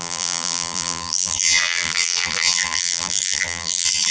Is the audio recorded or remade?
remade